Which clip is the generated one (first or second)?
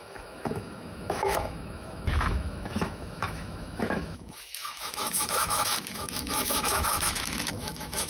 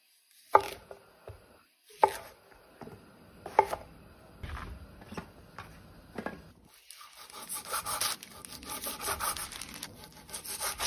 first